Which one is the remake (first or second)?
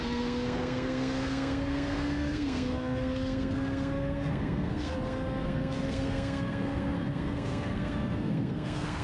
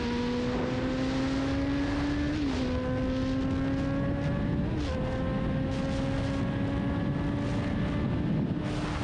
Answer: first